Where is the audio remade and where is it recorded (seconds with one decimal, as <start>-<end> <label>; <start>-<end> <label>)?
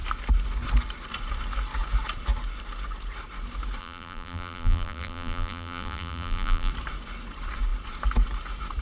0.0-3.8 recorded; 3.8-6.7 remade; 6.7-8.8 recorded